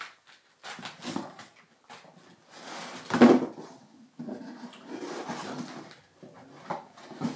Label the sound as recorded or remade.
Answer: recorded